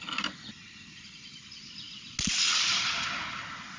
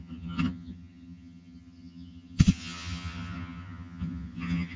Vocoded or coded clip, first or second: second